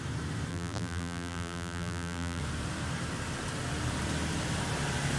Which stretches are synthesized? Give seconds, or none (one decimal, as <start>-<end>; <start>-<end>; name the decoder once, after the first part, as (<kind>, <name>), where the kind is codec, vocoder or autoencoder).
0.5-2.4 (vocoder, BigVGAN v2)